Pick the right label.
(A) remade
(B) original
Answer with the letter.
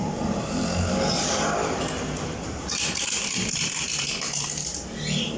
B